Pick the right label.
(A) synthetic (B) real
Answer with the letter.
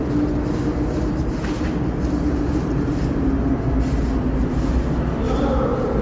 B